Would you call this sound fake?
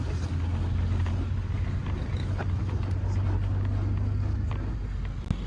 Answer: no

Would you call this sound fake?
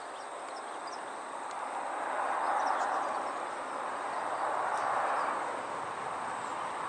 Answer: no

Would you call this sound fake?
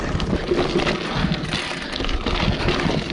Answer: no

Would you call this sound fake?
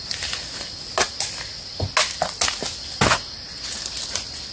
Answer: no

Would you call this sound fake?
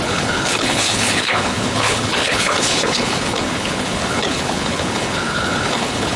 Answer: yes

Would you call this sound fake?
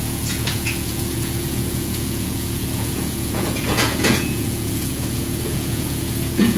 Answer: yes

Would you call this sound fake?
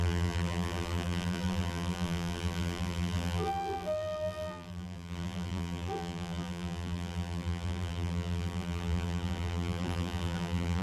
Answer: yes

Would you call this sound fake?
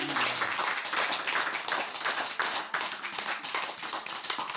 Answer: no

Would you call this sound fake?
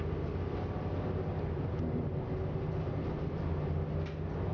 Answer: no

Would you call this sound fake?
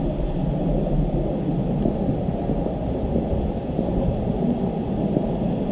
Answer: no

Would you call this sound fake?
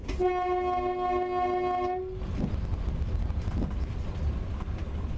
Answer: no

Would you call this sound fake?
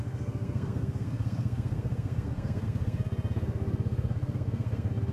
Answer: yes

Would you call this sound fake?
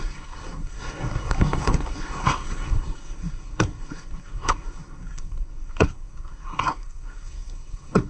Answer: yes